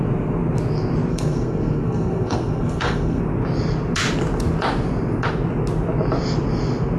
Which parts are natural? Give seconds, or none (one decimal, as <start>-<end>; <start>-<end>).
0.0-1.1; 3.2-7.0